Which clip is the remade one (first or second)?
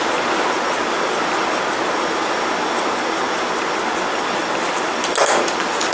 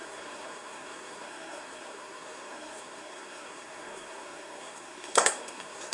second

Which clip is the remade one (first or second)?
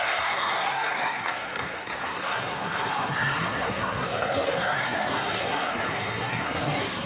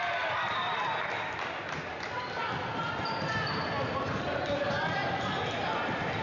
first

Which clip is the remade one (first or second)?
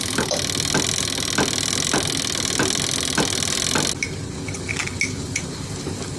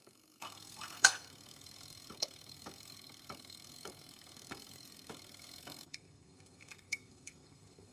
second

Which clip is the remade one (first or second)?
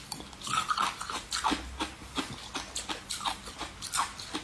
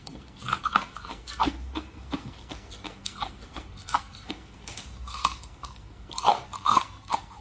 second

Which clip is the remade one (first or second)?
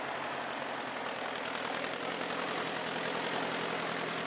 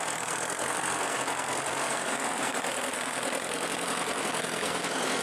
second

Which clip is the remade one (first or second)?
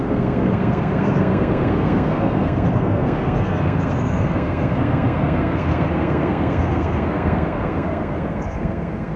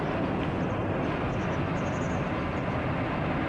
first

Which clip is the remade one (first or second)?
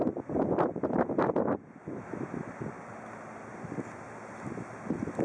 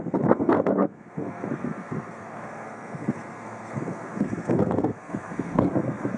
second